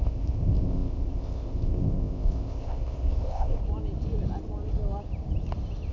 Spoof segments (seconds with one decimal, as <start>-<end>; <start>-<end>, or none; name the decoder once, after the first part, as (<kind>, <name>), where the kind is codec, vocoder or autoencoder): 0.0-3.6 (codec, ZipCodec)